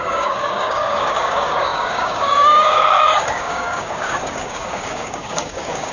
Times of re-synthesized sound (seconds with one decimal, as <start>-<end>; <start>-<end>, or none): 0.0-5.9